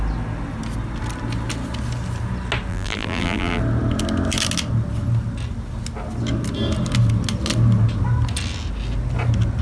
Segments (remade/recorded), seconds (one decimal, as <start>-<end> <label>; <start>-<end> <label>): 0.0-2.7 recorded; 2.7-3.6 remade; 3.6-9.6 recorded

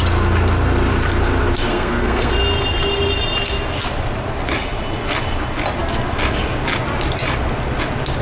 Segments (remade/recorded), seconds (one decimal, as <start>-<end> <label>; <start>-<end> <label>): 0.0-1.7 recorded; 1.7-2.3 remade; 2.3-8.2 recorded

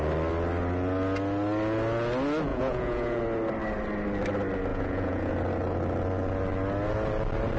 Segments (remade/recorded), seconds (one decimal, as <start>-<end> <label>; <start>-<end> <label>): 0.0-2.5 recorded; 2.5-3.2 remade; 3.2-4.7 recorded; 4.7-5.3 remade; 5.3-7.6 recorded

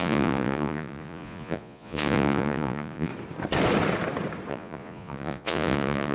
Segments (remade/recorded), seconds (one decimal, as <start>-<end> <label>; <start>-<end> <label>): 0.0-3.1 remade; 3.1-4.5 recorded; 4.5-6.1 remade

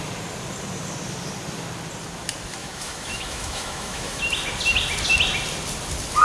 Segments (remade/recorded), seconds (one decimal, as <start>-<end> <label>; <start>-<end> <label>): 0.0-2.6 recorded; 2.6-4.2 remade; 4.2-6.2 recorded

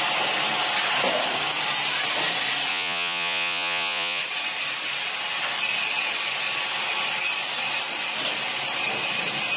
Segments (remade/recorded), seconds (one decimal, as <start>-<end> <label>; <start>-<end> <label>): 0.0-2.7 recorded; 2.7-4.2 remade; 4.2-9.6 recorded

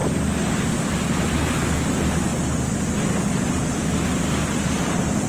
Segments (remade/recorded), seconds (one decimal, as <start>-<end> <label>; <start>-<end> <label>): 0.0-5.3 recorded